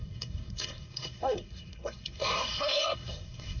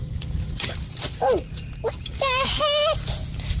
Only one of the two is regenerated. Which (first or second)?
first